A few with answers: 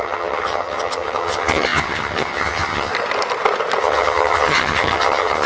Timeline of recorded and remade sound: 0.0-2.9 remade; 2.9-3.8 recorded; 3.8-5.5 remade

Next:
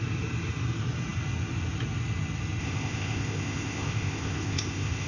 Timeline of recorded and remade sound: 0.0-2.6 recorded; 2.6-5.1 remade

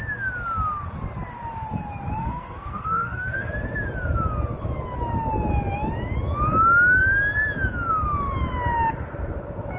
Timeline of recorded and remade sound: 0.0-2.2 recorded; 2.2-3.5 remade; 3.5-9.8 recorded